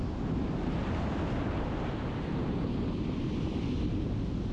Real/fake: real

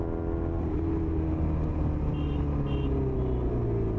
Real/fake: real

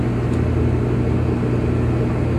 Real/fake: real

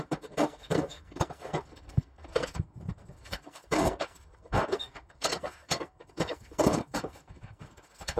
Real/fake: fake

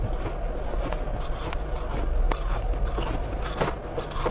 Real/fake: real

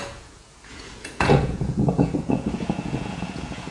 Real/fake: fake